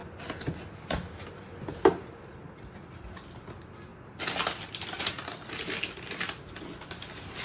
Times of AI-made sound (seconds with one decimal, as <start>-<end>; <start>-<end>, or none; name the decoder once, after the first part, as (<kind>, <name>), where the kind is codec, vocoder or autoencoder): none